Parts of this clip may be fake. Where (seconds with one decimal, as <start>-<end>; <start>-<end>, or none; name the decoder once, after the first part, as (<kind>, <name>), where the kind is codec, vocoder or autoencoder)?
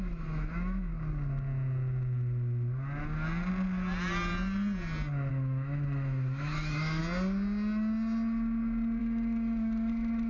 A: 0.0-0.9 (autoencoder, DAC-VAE); 5.3-7.0; 9.0-10.3